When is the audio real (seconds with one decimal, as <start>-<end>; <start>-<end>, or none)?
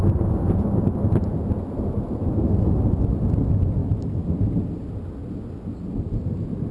0.0-6.7